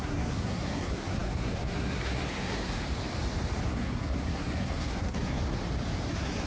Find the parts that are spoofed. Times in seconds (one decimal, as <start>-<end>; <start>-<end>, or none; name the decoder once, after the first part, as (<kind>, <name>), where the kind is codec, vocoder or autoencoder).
0.0-2.8 (codec, SNAC); 3.6-5.4; 6.1-6.5